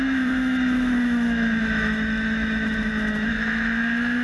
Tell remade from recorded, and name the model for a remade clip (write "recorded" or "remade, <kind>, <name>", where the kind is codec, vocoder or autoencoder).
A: remade, autoencoder, DAC-VAE